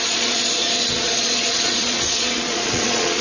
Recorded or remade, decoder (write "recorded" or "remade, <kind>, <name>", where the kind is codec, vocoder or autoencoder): remade, vocoder, Vocos